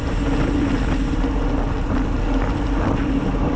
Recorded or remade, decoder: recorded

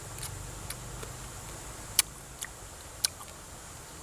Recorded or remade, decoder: recorded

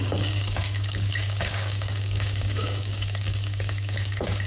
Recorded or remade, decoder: remade, codec, DAC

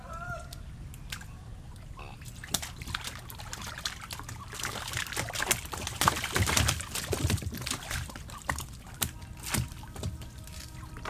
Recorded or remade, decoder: recorded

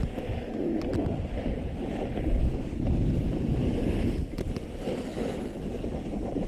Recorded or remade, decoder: recorded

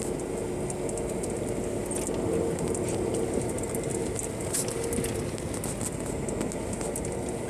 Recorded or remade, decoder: recorded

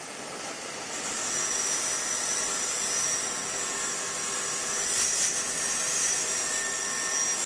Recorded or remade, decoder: recorded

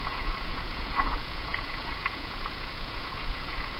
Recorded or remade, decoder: remade, vocoder, Vocos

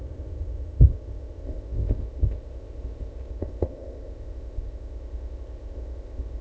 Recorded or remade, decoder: remade, codec, ZipCodec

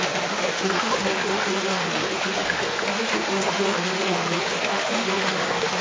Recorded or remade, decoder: remade, autoencoder, DAC-VAE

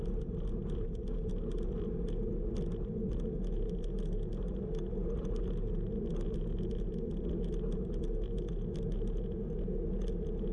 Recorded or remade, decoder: recorded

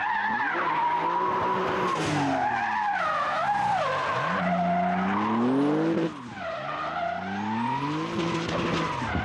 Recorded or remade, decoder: recorded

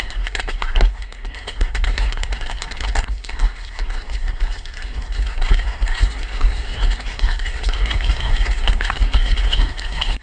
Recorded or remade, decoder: remade, codec, SNAC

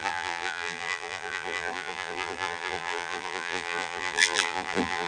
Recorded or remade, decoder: remade, vocoder, BigVGAN v2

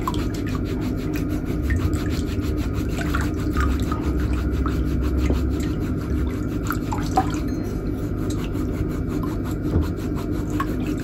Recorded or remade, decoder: recorded